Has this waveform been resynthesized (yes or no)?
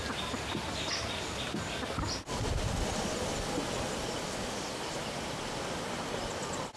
no